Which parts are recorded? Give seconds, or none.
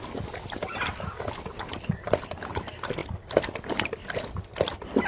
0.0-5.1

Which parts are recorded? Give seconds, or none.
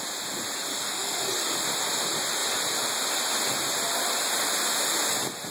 0.0-0.7; 1.3-5.5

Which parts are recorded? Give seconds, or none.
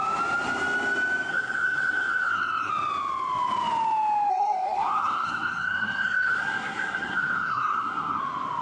0.0-1.3; 2.7-4.3; 8.2-8.6